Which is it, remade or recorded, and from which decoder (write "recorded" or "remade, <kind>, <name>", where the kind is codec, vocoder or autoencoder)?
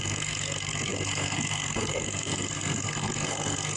remade, codec, SNAC